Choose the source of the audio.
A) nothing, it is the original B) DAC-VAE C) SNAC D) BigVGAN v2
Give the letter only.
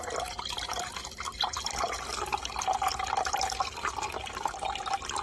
A